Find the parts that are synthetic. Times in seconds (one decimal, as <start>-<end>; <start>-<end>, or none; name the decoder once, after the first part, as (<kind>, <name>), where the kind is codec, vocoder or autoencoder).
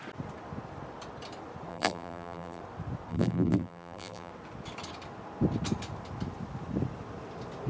1.7-2.6 (vocoder, BigVGAN v2); 3.1-4.3